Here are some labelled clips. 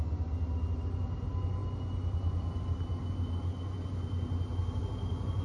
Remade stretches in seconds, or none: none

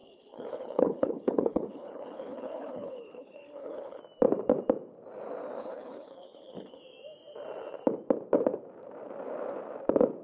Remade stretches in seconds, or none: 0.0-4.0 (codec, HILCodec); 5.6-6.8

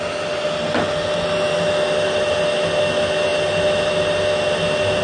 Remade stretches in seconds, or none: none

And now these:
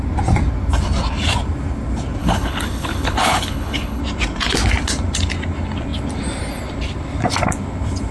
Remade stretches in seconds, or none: 2.2-4.0 (codec, HILCodec)

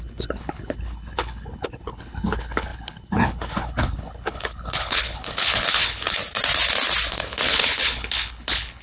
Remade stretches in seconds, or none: 0.0-6.2 (codec, HILCodec); 7.1-8.8

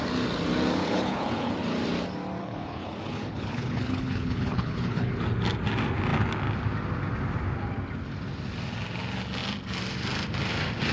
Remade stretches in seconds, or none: 0.8-1.5 (codec, HILCodec); 2.4-5.1

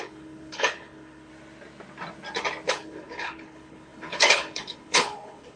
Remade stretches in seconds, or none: 0.0-1.3 (codec, HILCodec); 2.7-5.6

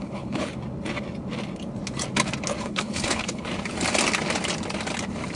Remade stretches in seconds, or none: 0.0-0.5 (codec, HILCodec); 2.6-3.5